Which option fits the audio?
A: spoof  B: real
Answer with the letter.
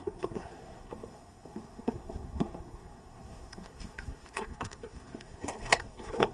A